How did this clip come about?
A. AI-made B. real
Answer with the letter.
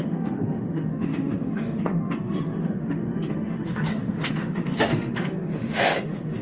A